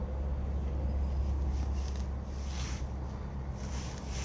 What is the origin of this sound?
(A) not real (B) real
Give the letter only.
B